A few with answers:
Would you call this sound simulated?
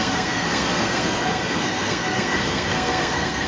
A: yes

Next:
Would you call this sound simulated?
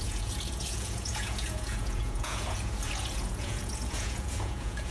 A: yes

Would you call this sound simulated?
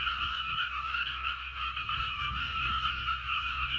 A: yes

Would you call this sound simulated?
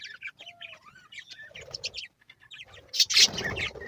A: no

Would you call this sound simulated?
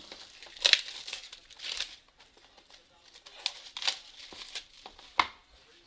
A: no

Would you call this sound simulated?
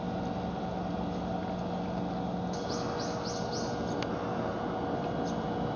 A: no